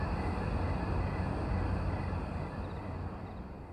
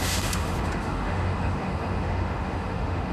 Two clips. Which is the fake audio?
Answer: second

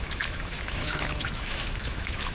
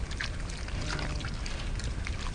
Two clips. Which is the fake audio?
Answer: first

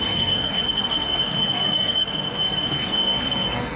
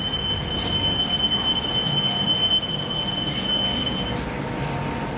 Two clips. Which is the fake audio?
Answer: first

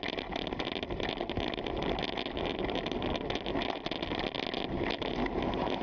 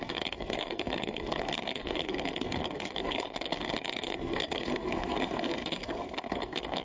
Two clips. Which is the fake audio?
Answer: second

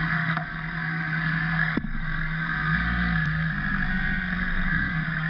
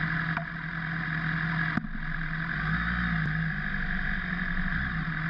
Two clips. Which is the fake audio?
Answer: first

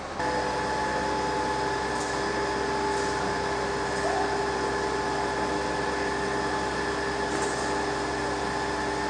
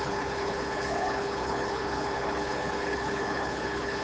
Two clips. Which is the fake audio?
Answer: second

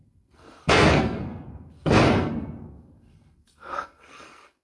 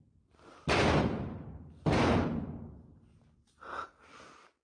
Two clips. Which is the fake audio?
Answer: first